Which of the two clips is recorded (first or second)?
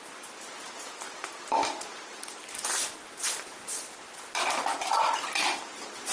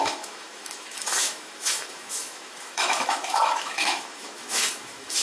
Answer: first